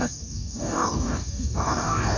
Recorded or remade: remade